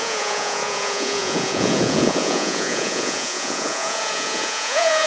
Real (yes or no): no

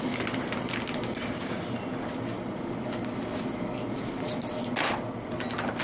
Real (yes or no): yes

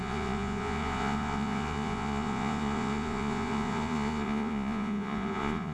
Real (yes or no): no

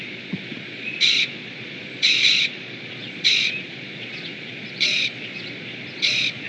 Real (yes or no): no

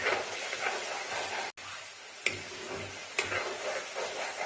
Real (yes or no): yes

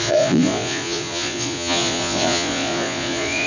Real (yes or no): no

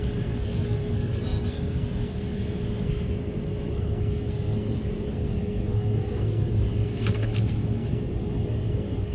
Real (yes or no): no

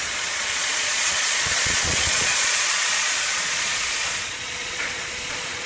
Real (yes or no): no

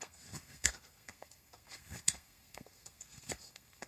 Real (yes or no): no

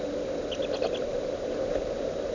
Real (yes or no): yes